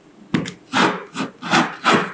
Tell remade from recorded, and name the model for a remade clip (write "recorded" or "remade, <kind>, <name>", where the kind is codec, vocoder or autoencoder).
recorded